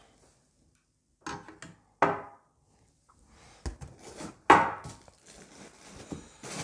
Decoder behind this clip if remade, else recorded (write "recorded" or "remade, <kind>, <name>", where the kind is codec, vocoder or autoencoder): recorded